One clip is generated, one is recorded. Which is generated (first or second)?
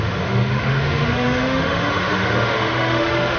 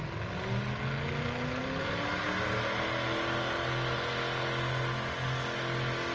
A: first